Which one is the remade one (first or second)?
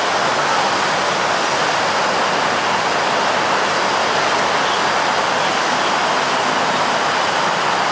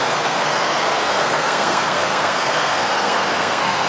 second